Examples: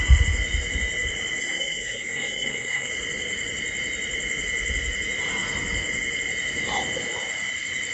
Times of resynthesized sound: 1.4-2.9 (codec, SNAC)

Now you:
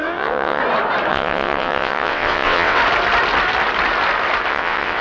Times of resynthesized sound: 0.0-0.6 (vocoder, WaveNeXt); 1.1-2.8; 4.5-5.0

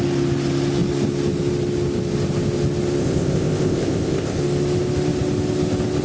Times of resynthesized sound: 3.0-4.4 (codec, ZipCodec)

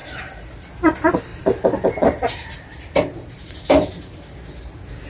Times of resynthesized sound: 0.0-0.5 (vocoder, BigVGAN v2); 1.3-4.4